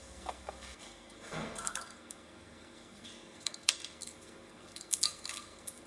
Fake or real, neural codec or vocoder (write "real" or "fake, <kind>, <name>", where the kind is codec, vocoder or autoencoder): fake, codec, SNAC